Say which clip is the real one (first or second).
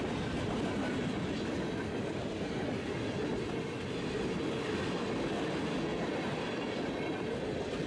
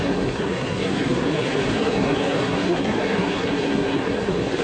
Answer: first